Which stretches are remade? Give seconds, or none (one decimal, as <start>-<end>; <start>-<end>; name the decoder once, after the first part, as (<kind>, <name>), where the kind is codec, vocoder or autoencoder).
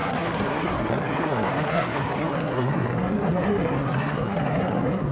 0.0-5.1 (codec, SNAC)